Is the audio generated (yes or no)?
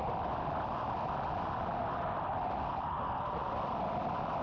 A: no